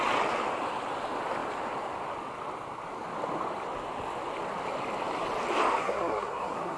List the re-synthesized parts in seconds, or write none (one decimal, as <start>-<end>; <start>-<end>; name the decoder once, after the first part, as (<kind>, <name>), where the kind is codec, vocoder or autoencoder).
5.8-6.8 (codec, SNAC)